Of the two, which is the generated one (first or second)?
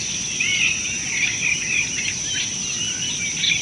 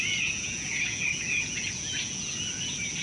second